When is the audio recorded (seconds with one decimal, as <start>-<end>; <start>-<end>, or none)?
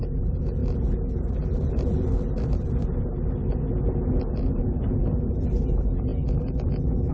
0.0-7.1